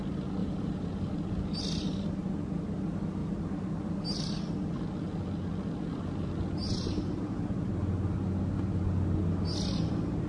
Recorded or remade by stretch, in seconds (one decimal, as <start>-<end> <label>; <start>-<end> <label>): 0.0-0.4 recorded; 0.4-1.1 remade; 1.1-3.2 recorded; 3.2-4.5 remade; 4.5-6.6 recorded; 6.6-7.7 remade; 7.7-10.3 recorded